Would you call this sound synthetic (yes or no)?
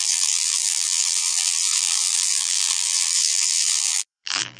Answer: yes